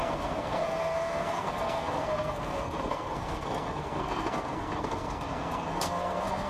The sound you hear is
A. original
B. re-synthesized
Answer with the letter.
B